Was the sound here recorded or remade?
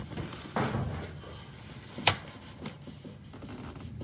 recorded